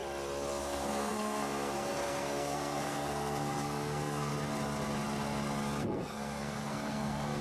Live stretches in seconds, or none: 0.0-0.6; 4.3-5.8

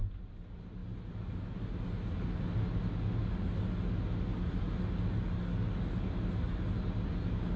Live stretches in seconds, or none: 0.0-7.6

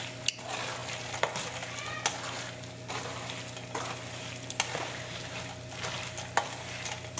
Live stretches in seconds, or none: 0.0-7.2

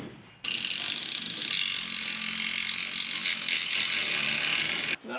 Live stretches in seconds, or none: 0.0-5.2

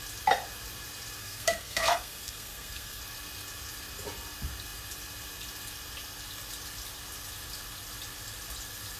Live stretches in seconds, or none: 0.0-1.2; 3.0-9.0